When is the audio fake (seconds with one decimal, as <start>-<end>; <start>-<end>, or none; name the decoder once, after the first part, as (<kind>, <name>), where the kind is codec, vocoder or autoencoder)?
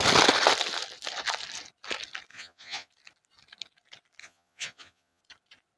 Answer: 2.3-2.9 (vocoder, Vocos); 4.2-5.2